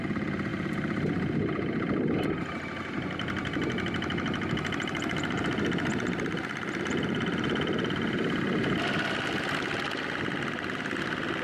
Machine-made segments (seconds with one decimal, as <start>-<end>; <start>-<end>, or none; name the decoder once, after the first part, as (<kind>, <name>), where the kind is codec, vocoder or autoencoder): 0.5-2.5 (vocoder, BigVGAN v2)